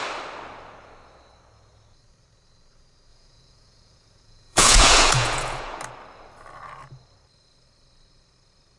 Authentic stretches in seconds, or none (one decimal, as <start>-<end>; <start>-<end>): 0.0-3.1; 5.8-8.8